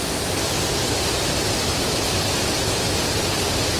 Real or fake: real